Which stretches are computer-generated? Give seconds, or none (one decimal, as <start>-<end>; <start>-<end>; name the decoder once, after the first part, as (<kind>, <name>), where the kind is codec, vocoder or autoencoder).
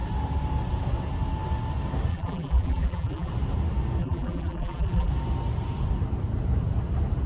2.1-3.3 (vocoder, BigVGAN v2); 4.0-5.1